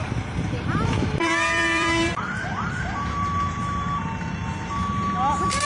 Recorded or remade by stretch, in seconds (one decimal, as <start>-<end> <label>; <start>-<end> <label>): 0.0-0.7 recorded; 0.7-2.7 remade; 2.7-5.6 recorded